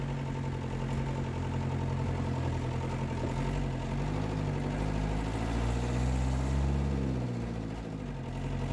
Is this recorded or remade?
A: recorded